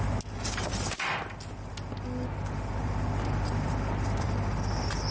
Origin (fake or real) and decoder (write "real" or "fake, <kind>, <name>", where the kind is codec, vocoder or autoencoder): real